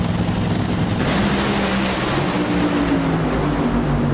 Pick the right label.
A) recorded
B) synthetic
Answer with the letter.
A